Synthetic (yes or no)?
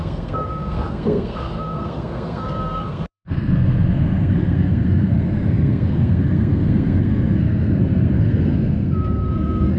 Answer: yes